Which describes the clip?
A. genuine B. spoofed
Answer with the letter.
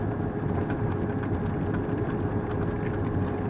A